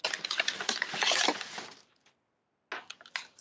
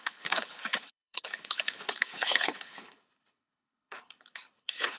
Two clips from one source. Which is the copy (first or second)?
second